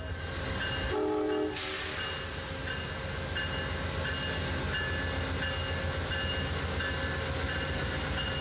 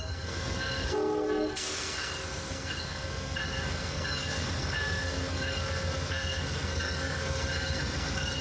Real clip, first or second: first